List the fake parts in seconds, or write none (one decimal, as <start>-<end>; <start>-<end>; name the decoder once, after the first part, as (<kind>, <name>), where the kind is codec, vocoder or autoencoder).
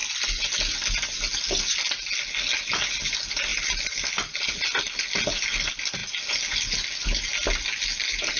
none